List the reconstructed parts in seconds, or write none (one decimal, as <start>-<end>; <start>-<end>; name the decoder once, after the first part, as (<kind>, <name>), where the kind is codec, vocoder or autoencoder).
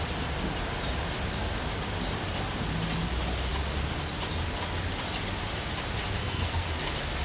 6.2-6.8 (codec, SNAC)